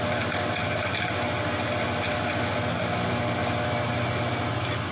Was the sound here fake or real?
real